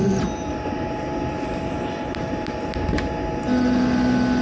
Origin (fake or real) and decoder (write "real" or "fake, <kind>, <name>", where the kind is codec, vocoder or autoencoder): real